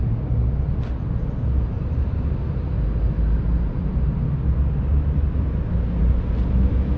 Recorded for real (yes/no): yes